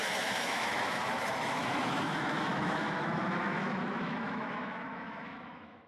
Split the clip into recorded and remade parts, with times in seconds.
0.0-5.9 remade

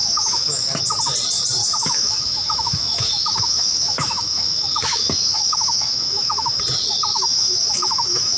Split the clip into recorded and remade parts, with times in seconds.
0.0-0.8 remade; 0.8-1.6 recorded; 1.6-6.6 remade; 6.6-7.1 recorded; 7.1-8.4 remade

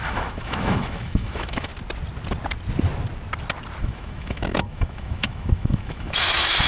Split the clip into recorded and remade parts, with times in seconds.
0.0-1.7 remade; 1.7-3.8 recorded; 3.8-6.7 remade